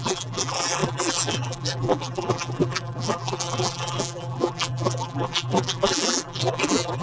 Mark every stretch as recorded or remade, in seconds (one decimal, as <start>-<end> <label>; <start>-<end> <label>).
0.0-7.0 remade